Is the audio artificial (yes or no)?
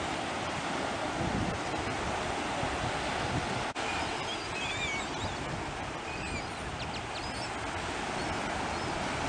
no